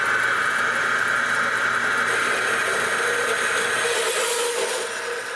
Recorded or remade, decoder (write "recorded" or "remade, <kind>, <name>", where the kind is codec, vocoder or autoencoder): recorded